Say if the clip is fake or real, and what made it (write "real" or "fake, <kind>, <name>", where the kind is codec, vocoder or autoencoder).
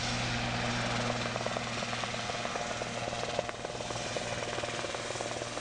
real